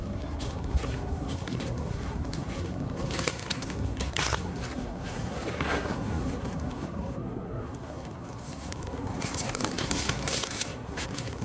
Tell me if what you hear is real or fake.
fake